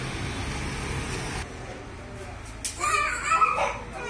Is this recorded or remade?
recorded